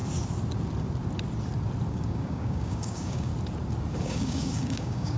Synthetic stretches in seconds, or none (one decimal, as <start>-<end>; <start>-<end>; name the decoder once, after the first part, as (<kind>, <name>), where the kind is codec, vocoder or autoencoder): 1.9-3.3 (codec, DAC); 4.0-5.2